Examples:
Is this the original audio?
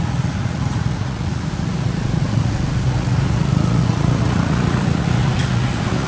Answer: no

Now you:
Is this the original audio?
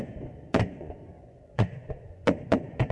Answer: no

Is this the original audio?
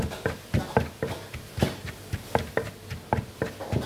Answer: yes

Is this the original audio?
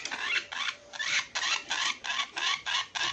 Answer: yes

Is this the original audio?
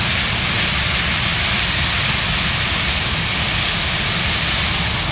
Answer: yes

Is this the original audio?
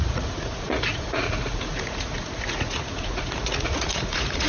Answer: no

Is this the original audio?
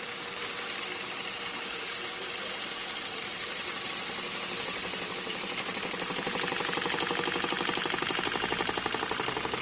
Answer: yes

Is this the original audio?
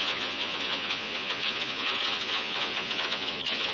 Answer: no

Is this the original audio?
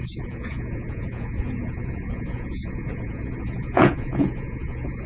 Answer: no